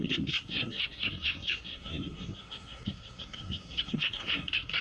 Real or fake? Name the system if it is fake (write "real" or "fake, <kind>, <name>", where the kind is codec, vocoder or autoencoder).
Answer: fake, codec, SNAC